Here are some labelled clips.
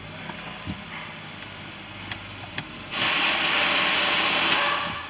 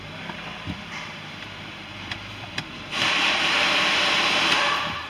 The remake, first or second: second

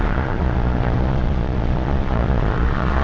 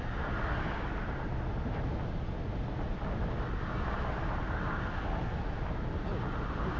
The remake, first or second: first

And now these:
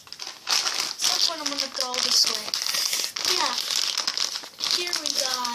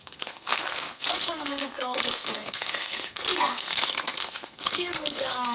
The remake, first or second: second